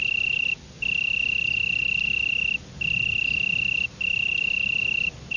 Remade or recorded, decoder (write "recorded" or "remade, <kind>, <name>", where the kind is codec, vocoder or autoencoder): recorded